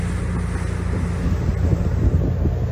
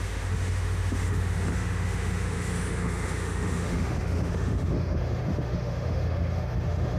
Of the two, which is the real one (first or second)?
first